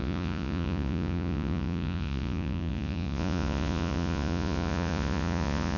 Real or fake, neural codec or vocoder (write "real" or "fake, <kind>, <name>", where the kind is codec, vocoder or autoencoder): fake, vocoder, Vocos